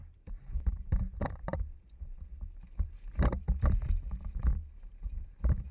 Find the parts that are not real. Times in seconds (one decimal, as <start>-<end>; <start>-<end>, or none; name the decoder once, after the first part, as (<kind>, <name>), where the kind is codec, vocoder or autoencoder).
0.0-3.4 (vocoder, BigVGAN v2); 4.9-5.7